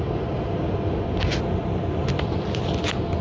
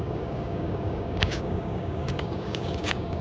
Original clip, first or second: first